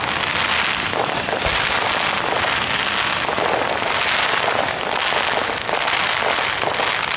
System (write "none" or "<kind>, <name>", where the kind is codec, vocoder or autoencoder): none